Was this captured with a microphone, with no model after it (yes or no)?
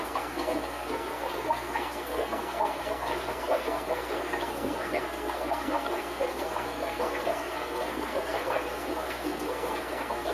no